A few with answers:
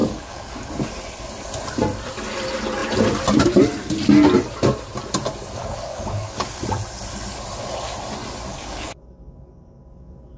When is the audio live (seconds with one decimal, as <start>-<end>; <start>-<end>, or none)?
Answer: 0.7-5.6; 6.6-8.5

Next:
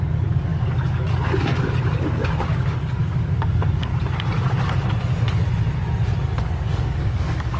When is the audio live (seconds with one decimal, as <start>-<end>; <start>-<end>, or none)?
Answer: 3.9-6.4

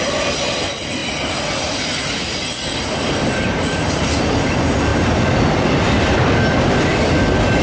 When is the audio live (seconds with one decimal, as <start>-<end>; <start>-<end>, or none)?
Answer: 0.0-7.6

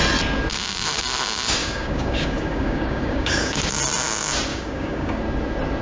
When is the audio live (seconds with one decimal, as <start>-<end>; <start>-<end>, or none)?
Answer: 0.0-1.6; 3.6-4.5; 5.2-5.8

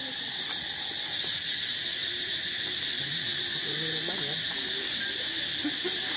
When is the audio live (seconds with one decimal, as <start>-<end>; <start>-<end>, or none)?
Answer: 0.0-6.2